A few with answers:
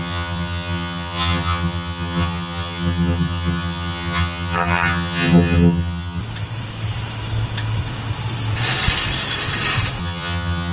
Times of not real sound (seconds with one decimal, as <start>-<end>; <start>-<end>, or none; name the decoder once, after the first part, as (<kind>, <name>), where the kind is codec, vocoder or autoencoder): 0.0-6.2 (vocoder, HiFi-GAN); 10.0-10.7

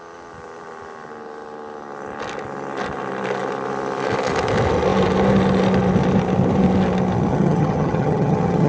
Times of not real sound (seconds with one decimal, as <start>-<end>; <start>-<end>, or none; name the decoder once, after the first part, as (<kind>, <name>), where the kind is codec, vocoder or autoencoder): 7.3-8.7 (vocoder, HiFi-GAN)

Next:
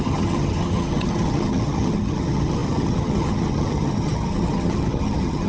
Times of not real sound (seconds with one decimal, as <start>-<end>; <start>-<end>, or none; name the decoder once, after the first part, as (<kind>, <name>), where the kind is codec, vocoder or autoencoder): 0.0-5.5 (vocoder, HiFi-GAN)